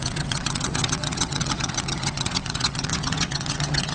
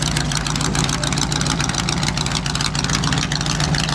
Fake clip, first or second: first